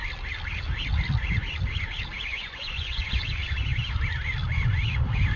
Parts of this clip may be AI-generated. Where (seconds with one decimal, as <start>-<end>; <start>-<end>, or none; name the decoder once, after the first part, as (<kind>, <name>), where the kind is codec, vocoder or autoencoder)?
2.3-3.2 (vocoder, Vocos)